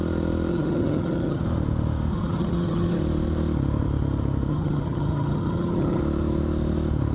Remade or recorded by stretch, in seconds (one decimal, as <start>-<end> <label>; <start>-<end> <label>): 0.0-0.5 recorded; 0.5-1.4 remade; 1.4-2.1 recorded; 2.1-3.0 remade; 3.0-4.5 recorded; 4.5-6.0 remade; 6.0-7.1 recorded